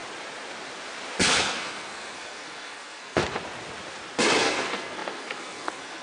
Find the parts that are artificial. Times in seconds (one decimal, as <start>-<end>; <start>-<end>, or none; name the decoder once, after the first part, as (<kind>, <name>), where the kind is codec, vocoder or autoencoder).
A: 1.4-3.2 (codec, SNAC); 4.4-6.0